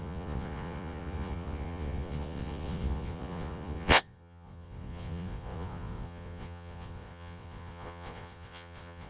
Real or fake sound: fake